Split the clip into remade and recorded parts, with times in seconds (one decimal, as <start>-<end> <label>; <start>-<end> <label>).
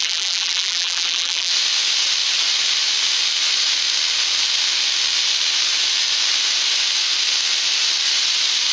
0.0-1.5 remade; 1.5-8.7 recorded